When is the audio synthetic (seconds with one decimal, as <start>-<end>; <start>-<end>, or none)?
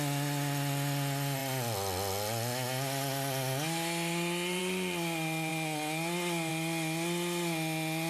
none